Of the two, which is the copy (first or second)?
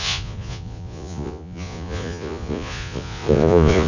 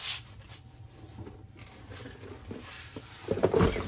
first